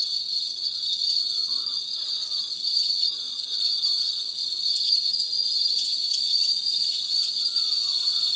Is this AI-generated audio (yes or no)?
yes